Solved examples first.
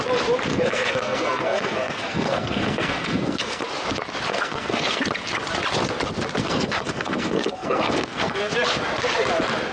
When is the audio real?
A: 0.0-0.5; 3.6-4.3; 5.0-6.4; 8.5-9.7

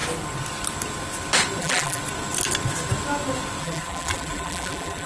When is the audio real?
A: 0.0-1.6; 2.0-3.6

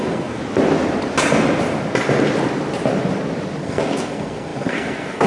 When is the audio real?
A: 0.4-3.6